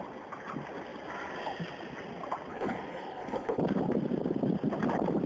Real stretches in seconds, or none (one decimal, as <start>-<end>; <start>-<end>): 0.0-2.5; 3.6-5.3